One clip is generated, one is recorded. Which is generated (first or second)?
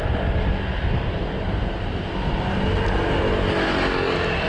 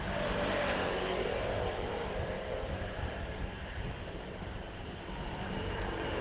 second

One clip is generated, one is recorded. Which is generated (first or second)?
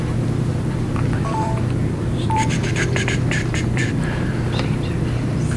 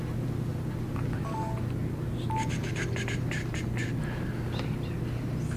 first